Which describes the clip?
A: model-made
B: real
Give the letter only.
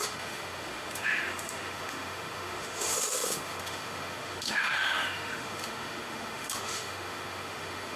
A